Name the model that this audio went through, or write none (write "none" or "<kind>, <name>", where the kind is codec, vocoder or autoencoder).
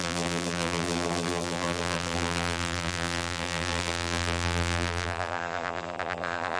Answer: vocoder, BigVGAN v2